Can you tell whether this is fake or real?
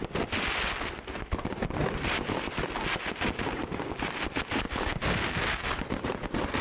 real